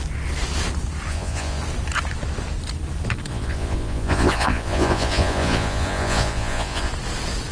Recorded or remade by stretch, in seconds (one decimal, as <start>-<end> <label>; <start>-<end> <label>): 0.0-1.1 recorded; 1.1-1.6 remade; 1.6-3.3 recorded; 3.3-6.9 remade; 6.9-7.5 recorded